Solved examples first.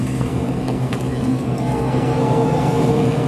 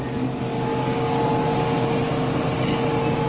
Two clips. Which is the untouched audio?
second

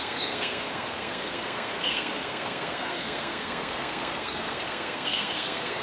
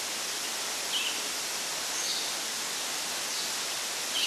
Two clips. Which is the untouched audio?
second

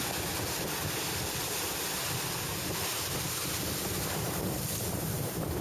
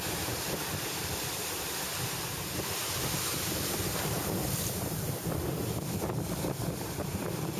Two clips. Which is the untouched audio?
first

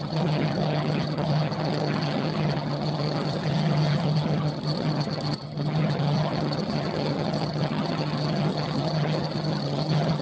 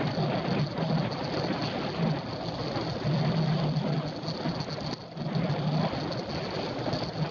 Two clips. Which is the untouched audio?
second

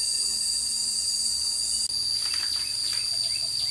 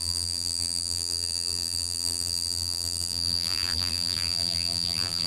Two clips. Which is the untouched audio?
first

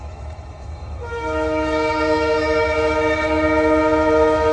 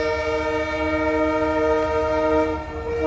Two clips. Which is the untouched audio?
second